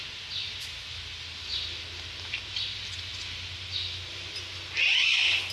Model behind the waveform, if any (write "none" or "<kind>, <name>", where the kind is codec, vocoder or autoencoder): none